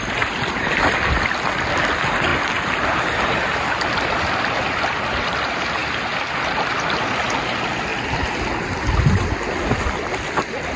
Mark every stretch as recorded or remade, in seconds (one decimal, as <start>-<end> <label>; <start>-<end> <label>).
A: 0.0-10.8 recorded